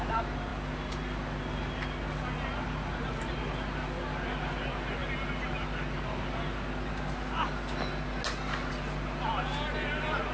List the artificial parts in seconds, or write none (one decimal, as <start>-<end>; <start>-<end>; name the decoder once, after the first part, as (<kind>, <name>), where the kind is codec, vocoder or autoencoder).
none